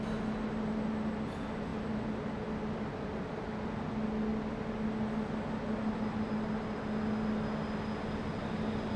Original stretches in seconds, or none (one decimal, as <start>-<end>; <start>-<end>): 0.0-9.0